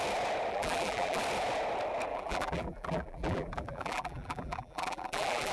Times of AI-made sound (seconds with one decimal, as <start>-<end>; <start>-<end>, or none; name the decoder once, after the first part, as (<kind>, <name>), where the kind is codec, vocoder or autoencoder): 0.5-1.2 (vocoder, BigVGAN v2); 2.1-5.5